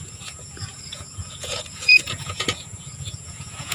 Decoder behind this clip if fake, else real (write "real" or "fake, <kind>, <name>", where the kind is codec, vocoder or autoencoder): fake, vocoder, Vocos